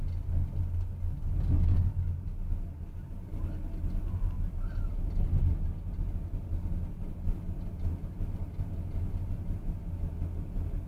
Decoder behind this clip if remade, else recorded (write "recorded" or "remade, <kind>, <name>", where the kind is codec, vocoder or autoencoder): recorded